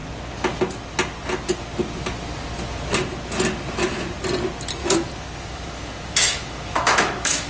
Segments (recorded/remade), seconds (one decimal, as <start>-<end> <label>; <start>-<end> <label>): 0.0-4.8 recorded; 4.8-7.5 remade